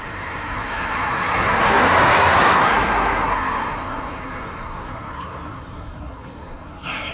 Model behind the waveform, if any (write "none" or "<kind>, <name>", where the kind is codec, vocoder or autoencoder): codec, SNAC